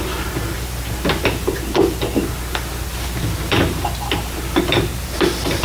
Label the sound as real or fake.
fake